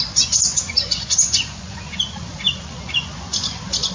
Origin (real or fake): fake